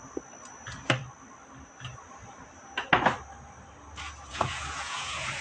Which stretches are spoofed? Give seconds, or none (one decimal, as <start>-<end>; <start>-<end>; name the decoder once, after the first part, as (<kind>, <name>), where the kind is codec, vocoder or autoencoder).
4.3-5.4 (vocoder, Vocos)